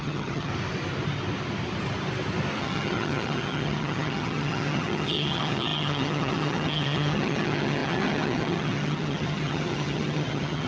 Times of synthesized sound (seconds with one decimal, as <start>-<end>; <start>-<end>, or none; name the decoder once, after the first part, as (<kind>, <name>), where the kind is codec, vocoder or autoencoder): 0.0-0.5 (vocoder, HiFi-GAN); 2.6-10.7